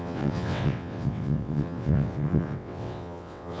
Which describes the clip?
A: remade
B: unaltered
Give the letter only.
A